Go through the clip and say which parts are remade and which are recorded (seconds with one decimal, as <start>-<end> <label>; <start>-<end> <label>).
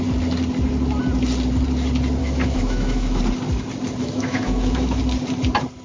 0.0-2.2 recorded; 2.2-3.2 remade; 3.2-4.0 recorded; 4.0-5.0 remade; 5.0-5.8 recorded